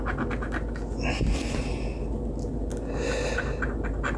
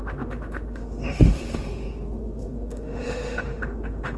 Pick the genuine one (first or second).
first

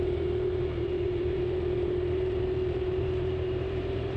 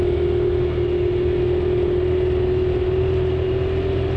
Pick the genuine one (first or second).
second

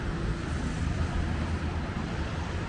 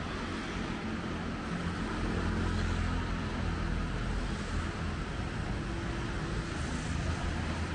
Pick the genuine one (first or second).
second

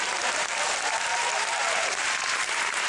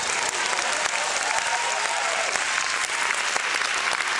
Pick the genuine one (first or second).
second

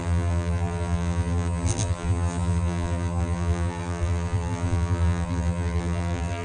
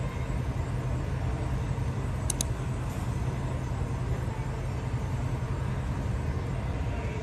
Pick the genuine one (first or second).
second